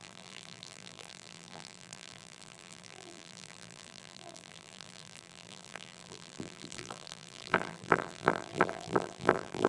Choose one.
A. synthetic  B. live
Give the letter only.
A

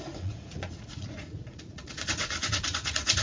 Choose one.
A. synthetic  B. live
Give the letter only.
A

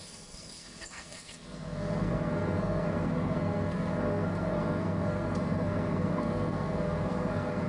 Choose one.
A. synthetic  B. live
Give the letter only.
A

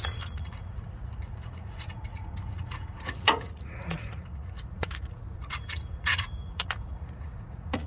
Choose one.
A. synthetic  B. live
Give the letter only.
A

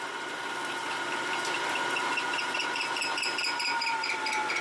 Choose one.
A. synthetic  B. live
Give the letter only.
A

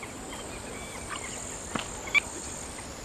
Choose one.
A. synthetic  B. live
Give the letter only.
B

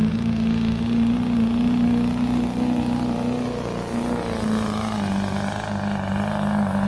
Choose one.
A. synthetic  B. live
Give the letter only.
B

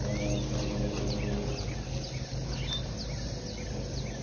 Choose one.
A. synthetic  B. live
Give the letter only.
B